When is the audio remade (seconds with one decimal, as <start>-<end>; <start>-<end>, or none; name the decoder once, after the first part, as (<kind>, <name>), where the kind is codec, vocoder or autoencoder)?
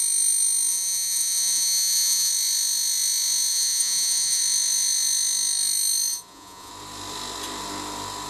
0.7-2.3 (vocoder, Vocos); 3.5-4.4; 6.1-6.7